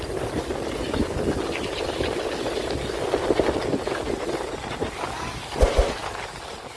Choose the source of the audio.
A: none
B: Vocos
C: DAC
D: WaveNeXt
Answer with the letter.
A